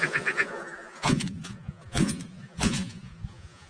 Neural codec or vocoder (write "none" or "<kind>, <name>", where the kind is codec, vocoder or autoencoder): vocoder, Vocos